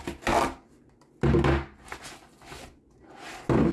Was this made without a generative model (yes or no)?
yes